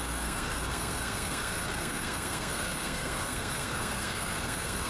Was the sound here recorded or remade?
remade